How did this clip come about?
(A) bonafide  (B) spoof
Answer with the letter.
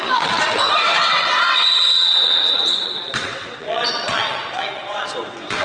B